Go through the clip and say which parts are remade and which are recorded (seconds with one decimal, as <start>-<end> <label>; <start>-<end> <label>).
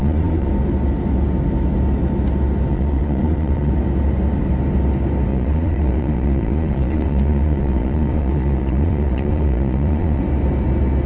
0.0-0.5 remade; 0.5-2.7 recorded; 2.7-3.7 remade; 3.7-5.3 recorded; 5.3-10.2 remade; 10.2-11.1 recorded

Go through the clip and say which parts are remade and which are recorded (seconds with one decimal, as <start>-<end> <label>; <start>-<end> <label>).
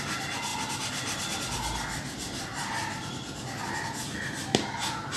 0.0-5.2 recorded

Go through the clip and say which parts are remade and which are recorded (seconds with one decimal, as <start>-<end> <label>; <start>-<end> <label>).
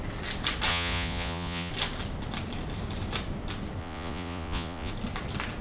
0.0-0.7 recorded; 0.7-1.7 remade; 1.7-3.8 recorded; 3.8-4.9 remade; 4.9-5.6 recorded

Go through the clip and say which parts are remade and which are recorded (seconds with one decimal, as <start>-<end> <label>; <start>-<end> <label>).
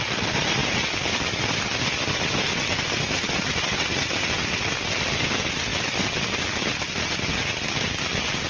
0.0-8.5 recorded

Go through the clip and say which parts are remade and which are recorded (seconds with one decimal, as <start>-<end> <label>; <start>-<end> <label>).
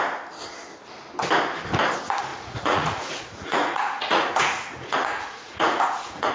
0.0-2.3 recorded; 2.3-6.3 remade